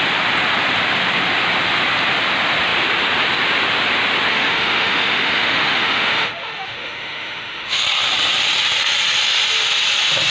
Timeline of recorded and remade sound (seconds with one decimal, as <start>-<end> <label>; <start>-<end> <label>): 0.0-4.3 recorded; 4.3-7.8 remade; 7.8-10.3 recorded